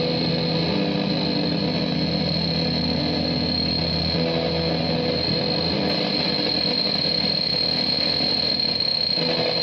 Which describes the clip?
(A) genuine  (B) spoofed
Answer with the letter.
A